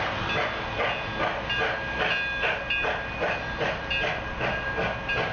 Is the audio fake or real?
real